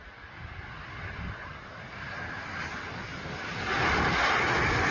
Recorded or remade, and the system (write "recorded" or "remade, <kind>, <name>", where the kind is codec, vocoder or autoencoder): recorded